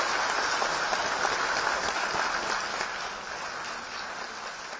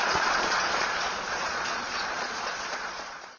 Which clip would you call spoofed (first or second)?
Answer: second